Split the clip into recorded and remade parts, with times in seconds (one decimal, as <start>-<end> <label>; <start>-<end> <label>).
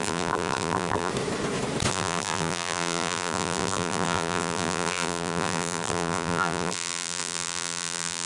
0.0-1.1 remade; 1.1-1.9 recorded; 1.9-8.3 remade